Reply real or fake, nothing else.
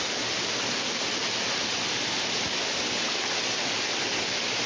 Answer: real